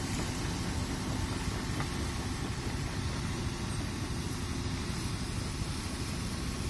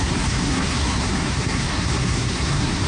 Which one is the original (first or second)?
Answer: first